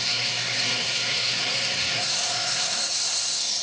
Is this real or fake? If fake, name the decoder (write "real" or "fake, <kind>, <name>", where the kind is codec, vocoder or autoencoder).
fake, codec, SNAC